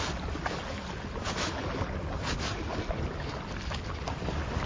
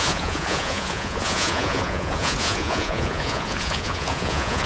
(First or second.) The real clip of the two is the first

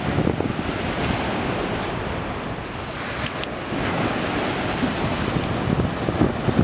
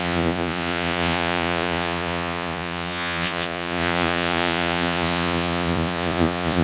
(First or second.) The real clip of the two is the first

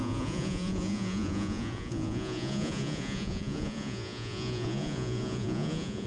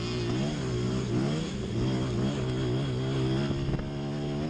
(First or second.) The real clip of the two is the second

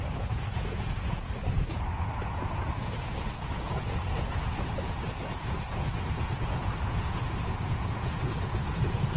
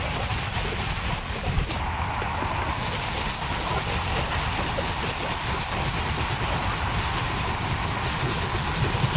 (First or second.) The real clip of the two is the second